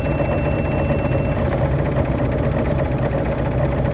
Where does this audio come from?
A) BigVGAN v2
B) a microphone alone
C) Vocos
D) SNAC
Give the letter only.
B